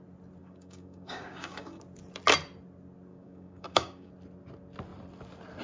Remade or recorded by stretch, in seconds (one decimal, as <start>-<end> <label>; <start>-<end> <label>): 0.0-0.4 recorded; 0.4-1.8 remade; 1.8-3.1 recorded; 3.1-4.1 remade; 4.1-5.6 recorded